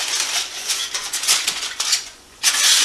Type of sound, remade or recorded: remade